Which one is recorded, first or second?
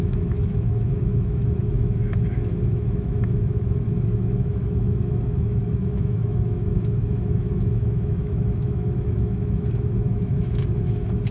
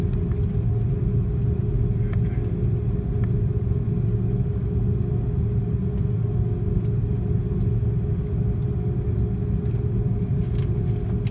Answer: second